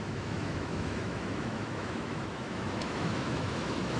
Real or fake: fake